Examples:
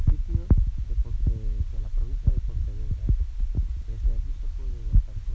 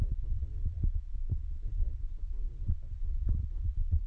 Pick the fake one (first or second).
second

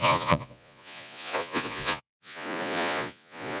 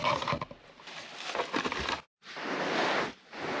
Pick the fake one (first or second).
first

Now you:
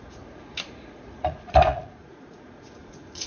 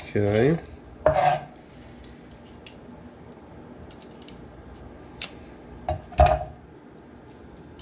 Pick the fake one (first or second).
first